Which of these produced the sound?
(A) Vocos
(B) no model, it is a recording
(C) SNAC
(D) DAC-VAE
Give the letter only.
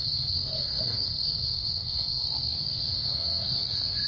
C